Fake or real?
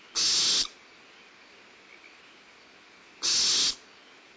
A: real